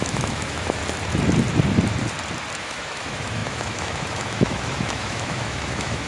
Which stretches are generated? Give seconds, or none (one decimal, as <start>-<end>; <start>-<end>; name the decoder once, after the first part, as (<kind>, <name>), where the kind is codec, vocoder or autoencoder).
0.0-0.8 (autoencoder, DAC-VAE); 2.6-6.1